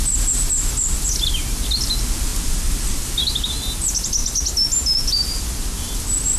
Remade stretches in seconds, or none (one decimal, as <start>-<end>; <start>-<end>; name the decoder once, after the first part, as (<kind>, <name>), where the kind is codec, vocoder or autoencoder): none